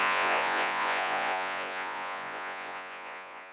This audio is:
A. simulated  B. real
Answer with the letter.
A